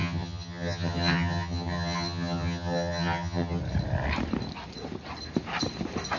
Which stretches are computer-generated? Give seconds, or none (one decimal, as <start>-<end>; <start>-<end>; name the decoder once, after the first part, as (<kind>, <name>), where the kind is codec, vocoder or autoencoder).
0.0-3.6 (vocoder, HiFi-GAN)